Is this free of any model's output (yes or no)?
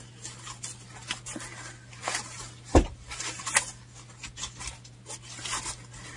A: yes